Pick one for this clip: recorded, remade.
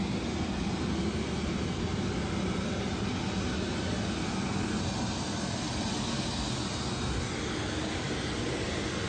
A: recorded